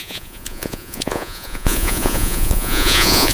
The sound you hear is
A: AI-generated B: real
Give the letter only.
A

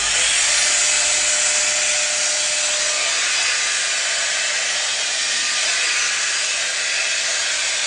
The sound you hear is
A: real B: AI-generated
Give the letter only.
A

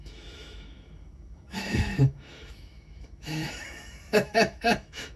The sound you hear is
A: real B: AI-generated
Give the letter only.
B